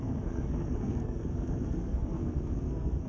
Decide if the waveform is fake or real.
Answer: fake